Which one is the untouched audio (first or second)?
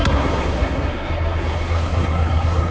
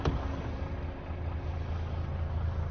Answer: second